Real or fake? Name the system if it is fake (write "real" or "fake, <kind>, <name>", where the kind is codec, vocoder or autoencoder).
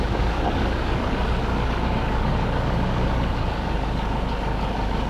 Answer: fake, codec, DAC